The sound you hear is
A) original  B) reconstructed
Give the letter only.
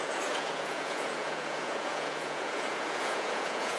B